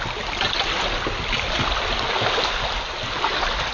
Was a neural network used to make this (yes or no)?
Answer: no